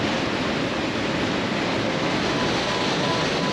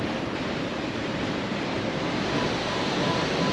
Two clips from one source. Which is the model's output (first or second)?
second